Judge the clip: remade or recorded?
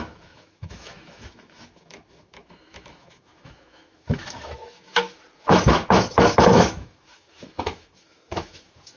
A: remade